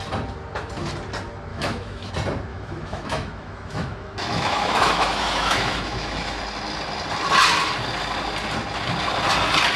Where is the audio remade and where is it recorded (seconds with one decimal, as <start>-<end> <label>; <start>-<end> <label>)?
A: 0.0-1.5 recorded; 1.5-2.1 remade; 2.1-2.5 recorded; 2.5-6.4 remade; 6.4-9.8 recorded